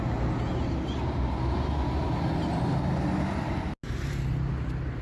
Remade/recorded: recorded